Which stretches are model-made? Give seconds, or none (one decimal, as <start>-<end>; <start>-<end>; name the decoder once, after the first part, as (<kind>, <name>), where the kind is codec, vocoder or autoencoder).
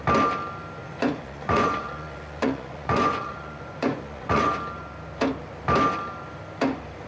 0.8-4.6 (vocoder, Vocos)